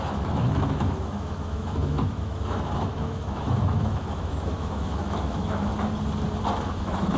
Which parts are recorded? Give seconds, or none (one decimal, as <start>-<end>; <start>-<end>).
5.7-6.7